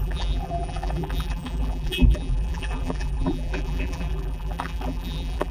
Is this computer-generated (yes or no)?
yes